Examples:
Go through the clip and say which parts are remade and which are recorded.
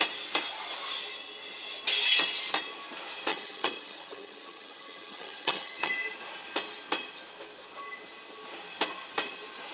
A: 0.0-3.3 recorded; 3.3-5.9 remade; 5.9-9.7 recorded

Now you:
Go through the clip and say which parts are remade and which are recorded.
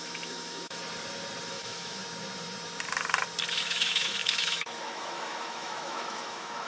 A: 0.0-0.8 remade; 0.8-1.5 recorded; 1.5-2.0 remade; 2.0-3.5 recorded; 3.5-6.7 remade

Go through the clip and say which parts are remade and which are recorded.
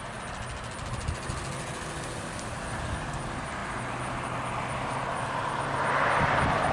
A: 0.0-6.7 recorded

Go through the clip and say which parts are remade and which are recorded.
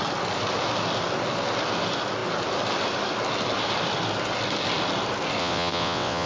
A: 0.0-5.4 recorded; 5.4-6.3 remade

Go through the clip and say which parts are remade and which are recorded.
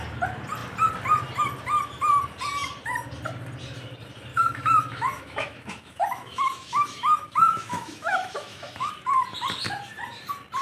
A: 0.0-4.3 recorded; 4.3-8.9 remade; 8.9-10.6 recorded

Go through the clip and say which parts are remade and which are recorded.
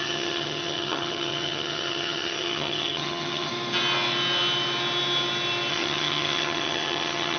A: 0.0-3.5 remade; 3.5-5.7 recorded; 5.7-7.4 remade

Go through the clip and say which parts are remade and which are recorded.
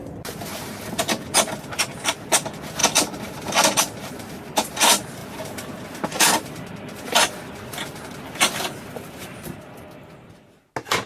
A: 0.0-2.8 recorded; 2.8-3.8 remade; 3.8-11.1 recorded